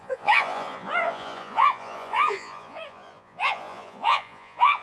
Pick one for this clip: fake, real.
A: fake